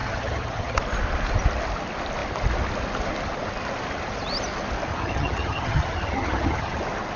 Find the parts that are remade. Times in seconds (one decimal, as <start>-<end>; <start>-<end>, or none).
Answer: 0.0-0.8; 4.9-6.8